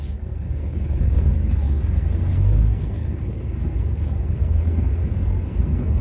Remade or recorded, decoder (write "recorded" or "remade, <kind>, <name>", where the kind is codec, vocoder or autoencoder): remade, codec, SNAC